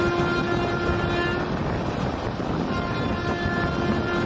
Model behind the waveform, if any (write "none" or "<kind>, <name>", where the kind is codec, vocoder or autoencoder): none